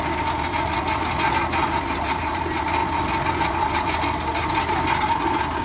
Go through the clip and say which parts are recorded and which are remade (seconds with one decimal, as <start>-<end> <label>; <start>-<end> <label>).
0.0-5.6 recorded